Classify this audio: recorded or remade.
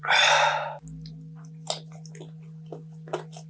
recorded